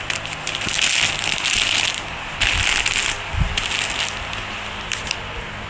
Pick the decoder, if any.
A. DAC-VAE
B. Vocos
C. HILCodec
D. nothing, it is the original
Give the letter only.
D